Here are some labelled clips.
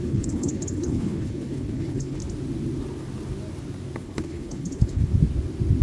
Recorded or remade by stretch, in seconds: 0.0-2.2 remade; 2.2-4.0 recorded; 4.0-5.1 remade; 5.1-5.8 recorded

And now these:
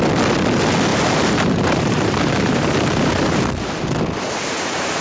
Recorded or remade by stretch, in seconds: 0.0-0.9 recorded; 0.9-3.4 remade; 3.4-5.0 recorded

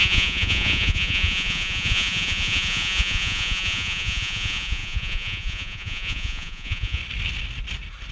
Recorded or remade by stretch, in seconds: 0.0-7.0 remade; 7.0-8.1 recorded

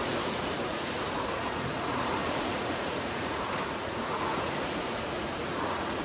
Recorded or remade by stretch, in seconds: 0.0-6.0 remade